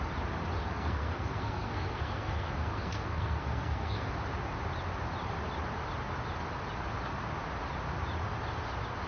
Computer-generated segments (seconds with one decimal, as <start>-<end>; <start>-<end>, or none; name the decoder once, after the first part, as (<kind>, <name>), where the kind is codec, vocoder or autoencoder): 0.6-4.1 (codec, SNAC)